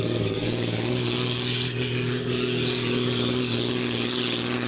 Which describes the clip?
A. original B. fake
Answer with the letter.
B